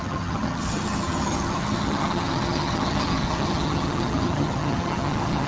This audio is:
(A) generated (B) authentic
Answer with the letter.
A